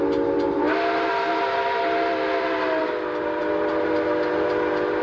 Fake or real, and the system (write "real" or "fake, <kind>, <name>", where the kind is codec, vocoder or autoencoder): real